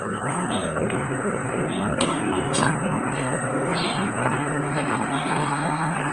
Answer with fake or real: fake